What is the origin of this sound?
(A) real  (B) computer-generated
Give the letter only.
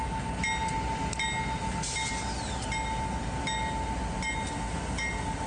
A